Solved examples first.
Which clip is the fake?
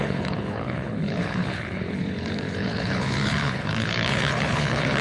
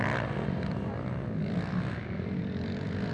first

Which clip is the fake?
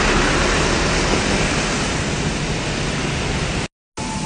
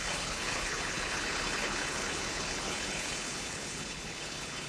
second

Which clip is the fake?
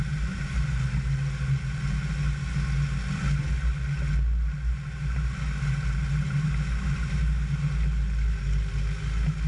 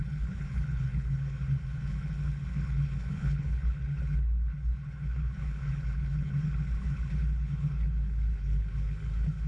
second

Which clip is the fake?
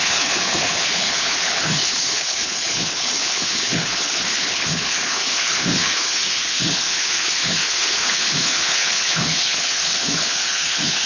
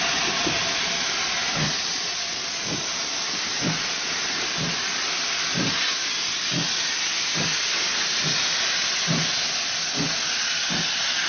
first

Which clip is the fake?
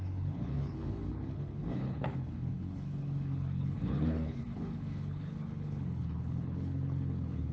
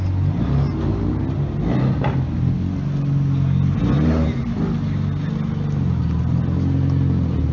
first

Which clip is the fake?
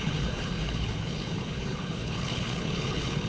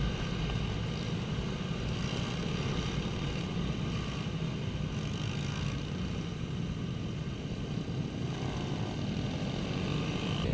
first